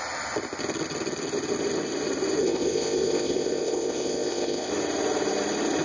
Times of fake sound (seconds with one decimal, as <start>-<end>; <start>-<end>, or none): 2.4-4.7